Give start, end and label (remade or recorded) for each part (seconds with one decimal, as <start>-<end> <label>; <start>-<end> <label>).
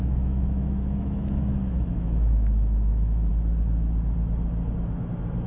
0.0-3.3 remade; 3.3-5.5 recorded